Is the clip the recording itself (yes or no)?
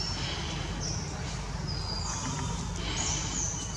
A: yes